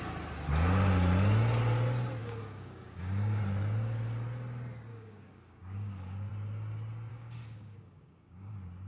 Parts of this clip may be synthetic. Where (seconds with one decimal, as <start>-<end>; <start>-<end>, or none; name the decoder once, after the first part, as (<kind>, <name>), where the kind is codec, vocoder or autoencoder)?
2.2-3.4 (codec, DAC); 4.9-6.3; 7.1-8.5